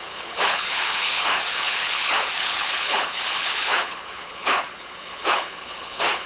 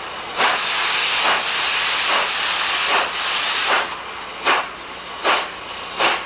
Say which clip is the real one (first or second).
second